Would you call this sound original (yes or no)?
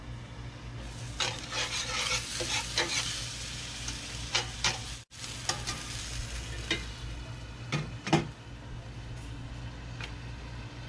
yes